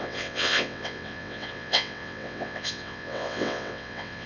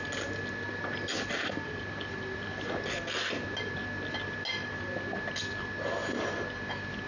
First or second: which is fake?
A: first